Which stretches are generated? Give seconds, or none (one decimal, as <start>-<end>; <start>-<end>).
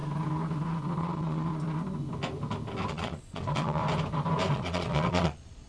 1.0-1.5; 2.9-3.8; 4.5-5.7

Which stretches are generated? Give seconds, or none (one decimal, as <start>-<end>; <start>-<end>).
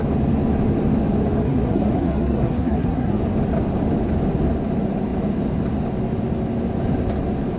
1.4-3.2